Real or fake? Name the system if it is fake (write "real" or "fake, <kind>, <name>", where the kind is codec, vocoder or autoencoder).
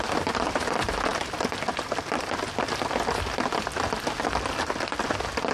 real